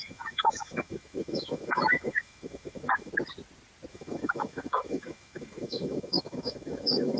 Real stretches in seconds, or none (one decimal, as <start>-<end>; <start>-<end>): 3.1-3.9